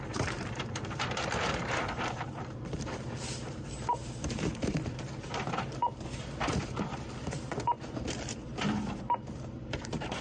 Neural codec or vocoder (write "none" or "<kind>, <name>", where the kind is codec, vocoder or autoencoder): vocoder, BigVGAN v2